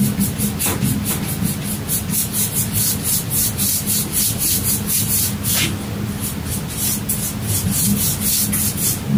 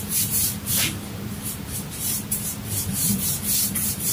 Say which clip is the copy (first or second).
second